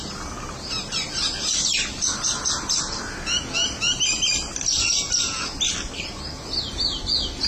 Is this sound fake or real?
real